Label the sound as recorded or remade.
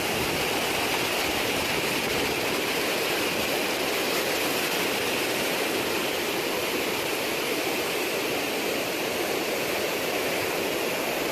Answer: recorded